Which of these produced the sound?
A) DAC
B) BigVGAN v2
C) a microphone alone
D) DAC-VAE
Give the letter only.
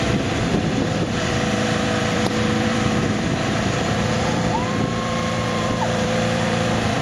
B